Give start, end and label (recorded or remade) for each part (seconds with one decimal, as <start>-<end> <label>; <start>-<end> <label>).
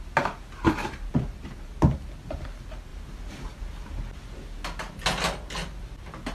0.0-6.3 recorded